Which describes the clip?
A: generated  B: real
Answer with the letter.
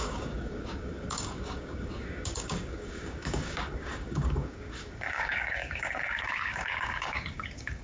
A